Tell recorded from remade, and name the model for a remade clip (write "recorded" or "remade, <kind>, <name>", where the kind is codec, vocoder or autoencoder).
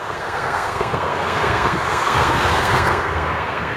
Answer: remade, codec, SNAC